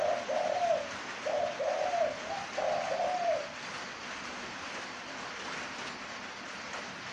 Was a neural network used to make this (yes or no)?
no